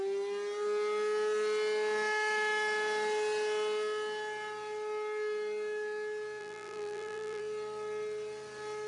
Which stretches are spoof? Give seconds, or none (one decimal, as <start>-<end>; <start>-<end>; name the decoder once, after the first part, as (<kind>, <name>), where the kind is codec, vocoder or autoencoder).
6.4-7.4 (vocoder, BigVGAN v2)